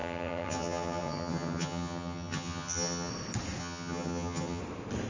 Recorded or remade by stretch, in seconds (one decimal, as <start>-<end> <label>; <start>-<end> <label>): 0.0-3.1 remade; 3.1-3.6 recorded; 3.6-4.6 remade; 4.6-5.1 recorded